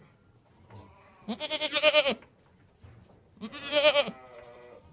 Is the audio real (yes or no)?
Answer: yes